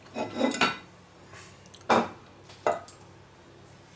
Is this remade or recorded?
recorded